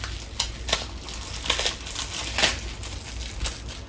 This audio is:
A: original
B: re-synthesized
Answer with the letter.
A